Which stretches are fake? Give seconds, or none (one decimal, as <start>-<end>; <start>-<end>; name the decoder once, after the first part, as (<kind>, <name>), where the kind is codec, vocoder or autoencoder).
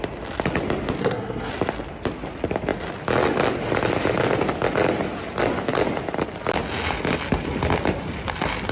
1.0-1.5 (codec, SNAC)